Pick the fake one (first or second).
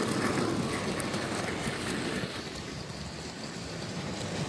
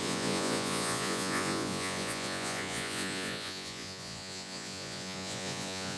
second